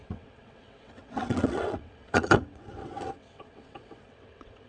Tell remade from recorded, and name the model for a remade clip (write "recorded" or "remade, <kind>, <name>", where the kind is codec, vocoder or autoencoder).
remade, vocoder, WaveNeXt